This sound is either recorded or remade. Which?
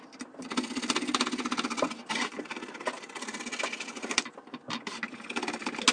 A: recorded